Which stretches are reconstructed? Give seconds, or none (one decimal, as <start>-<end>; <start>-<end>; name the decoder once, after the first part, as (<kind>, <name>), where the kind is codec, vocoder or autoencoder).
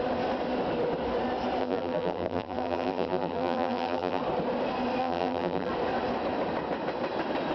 1.6-4.2 (vocoder, BigVGAN v2); 5.0-5.7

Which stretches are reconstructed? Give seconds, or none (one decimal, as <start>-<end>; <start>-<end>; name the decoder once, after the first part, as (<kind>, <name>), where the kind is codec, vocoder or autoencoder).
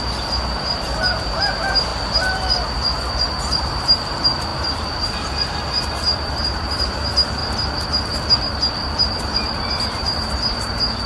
0.0-1.9 (vocoder, BigVGAN v2); 3.4-7.4; 8.4-11.1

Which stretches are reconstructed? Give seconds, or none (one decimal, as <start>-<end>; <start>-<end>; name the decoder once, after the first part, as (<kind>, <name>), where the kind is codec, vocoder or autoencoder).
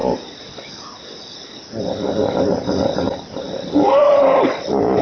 3.0-5.0 (vocoder, BigVGAN v2)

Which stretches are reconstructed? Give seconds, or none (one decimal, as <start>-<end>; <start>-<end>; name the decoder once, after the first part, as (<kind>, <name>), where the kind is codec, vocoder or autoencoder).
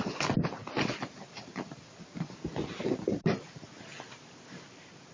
0.6-3.7 (vocoder, BigVGAN v2)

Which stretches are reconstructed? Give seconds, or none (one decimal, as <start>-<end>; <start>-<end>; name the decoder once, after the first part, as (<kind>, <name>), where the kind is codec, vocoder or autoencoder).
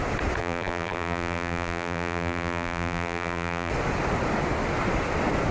0.4-3.7 (vocoder, BigVGAN v2)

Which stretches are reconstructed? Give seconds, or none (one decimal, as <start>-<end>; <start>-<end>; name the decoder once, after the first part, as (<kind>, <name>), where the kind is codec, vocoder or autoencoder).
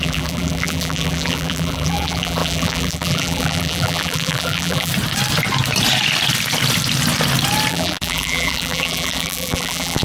0.0-4.9 (vocoder, BigVGAN v2); 7.7-10.0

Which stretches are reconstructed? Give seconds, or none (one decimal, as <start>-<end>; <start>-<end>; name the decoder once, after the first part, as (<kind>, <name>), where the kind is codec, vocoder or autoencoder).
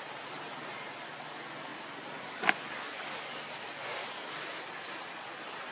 none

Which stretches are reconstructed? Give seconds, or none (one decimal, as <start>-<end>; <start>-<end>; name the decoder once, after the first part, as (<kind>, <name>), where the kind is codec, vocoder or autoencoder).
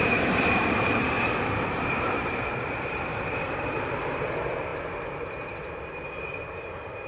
0.0-4.3 (vocoder, BigVGAN v2)